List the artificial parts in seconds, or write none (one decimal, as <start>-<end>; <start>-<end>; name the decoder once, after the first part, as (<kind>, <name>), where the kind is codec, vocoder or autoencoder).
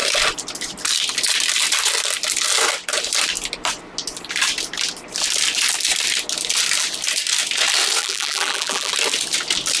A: 8.0-8.9 (vocoder, BigVGAN v2)